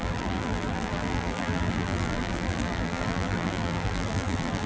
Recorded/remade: remade